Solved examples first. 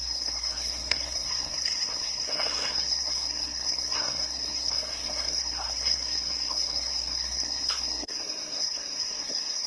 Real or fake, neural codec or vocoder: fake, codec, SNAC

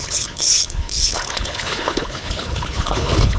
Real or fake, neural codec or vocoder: fake, codec, HILCodec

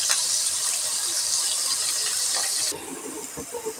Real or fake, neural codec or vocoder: real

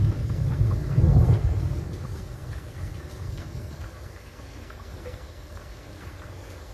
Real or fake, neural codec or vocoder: fake, codec, SNAC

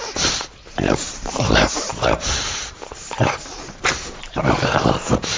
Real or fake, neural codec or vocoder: fake, vocoder, BigVGAN v2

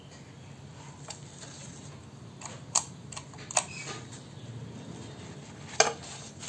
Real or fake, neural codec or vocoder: real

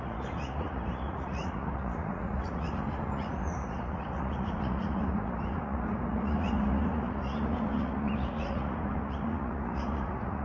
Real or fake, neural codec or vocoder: fake, vocoder, Vocos